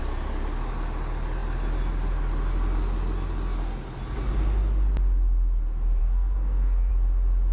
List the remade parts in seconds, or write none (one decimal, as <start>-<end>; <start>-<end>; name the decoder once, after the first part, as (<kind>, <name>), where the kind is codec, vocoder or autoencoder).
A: 6.0-6.9 (codec, SNAC)